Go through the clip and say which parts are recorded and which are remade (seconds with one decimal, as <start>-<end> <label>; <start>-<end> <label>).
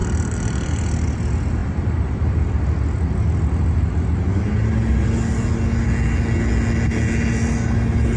0.0-8.2 recorded